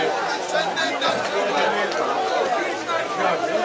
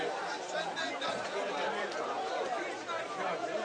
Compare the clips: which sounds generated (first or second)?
second